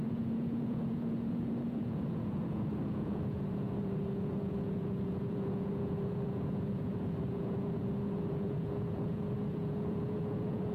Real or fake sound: fake